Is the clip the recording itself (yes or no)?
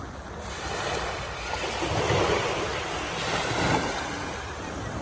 yes